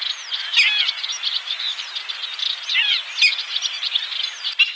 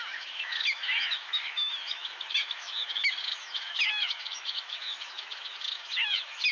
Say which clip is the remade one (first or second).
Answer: second